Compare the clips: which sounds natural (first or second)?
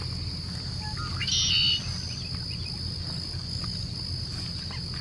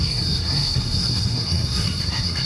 first